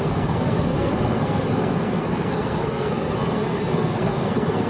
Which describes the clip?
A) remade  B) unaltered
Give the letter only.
A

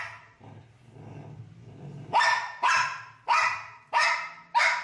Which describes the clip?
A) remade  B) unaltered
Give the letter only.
B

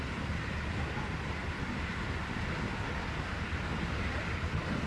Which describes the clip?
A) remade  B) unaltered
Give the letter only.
B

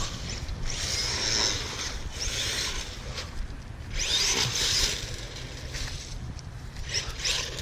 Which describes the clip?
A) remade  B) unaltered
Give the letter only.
B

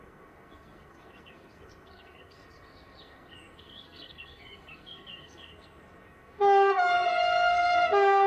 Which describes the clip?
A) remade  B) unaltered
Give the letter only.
A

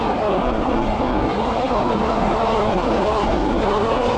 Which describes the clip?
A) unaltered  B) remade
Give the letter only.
B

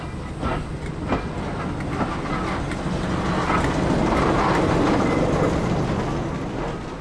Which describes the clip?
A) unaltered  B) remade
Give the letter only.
A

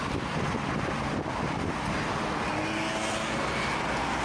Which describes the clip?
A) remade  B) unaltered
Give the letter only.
B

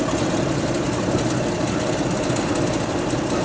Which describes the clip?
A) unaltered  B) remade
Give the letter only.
A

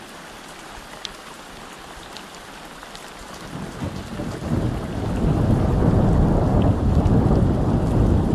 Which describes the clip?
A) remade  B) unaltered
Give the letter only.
B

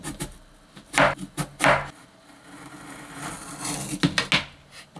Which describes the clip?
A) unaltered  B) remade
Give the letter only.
A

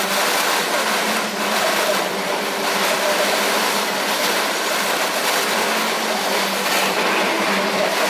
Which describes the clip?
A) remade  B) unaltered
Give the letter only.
B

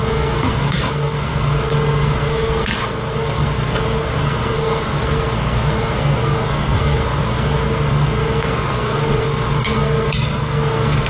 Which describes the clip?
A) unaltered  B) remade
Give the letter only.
B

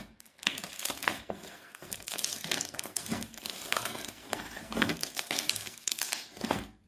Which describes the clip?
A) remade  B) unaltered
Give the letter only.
A